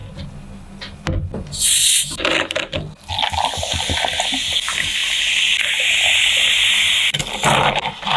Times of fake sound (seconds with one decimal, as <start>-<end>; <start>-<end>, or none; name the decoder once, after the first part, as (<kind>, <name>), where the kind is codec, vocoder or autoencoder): none